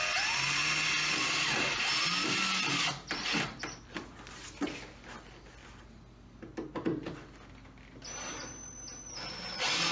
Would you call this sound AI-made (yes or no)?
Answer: no